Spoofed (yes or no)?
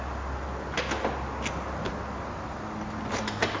no